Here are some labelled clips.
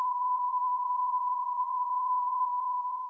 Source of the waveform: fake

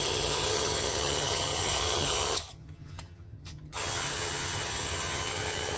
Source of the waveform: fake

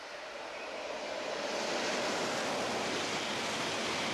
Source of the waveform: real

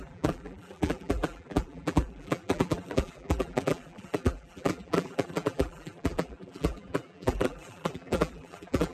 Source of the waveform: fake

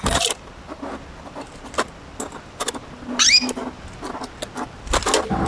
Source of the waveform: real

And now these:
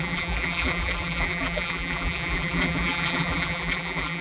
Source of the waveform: fake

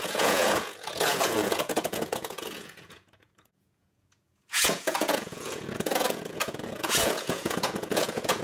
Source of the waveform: fake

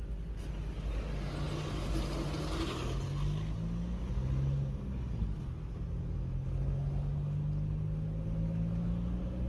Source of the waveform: real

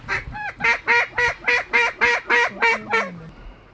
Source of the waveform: real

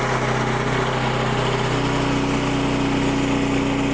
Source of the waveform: real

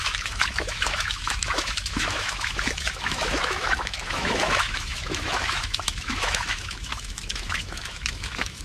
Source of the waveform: fake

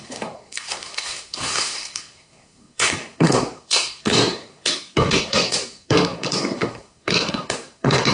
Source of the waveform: fake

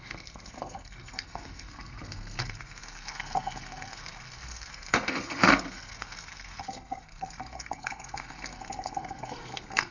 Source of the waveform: fake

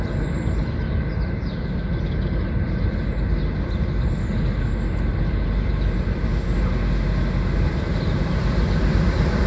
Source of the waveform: real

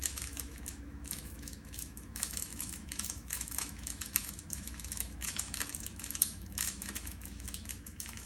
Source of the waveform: fake